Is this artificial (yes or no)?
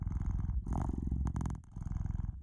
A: no